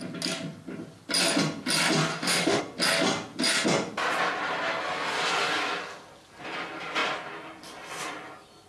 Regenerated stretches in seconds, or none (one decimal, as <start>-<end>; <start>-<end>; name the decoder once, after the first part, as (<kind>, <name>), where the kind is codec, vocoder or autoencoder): 2.1-2.6 (autoencoder, DAC-VAE)